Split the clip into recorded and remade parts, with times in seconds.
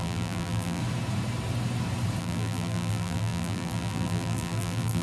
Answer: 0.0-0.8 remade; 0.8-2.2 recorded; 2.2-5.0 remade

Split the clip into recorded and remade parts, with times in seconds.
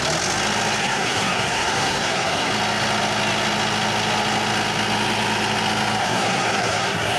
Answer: 0.0-0.8 recorded; 0.8-2.5 remade; 2.5-6.0 recorded; 6.0-7.2 remade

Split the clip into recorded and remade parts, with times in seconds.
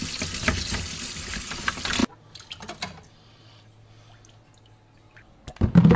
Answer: 0.0-6.0 recorded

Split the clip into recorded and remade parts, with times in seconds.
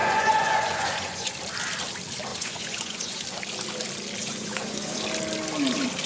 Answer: 0.0-1.3 remade; 1.3-2.3 recorded; 2.3-3.2 remade; 3.2-4.2 recorded; 4.2-5.0 remade; 5.0-6.1 recorded